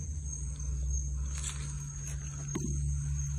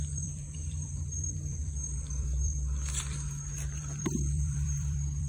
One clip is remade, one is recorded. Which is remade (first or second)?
second